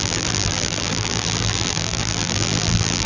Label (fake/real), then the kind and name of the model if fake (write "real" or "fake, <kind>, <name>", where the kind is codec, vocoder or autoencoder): fake, vocoder, BigVGAN v2